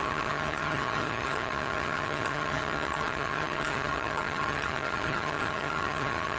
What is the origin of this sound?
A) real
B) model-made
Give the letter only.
B